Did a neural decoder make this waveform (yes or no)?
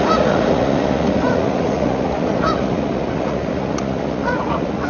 yes